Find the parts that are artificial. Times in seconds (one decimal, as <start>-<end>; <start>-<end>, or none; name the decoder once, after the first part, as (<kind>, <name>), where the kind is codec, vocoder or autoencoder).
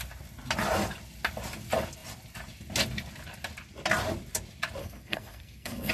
4.8-5.9 (codec, SNAC)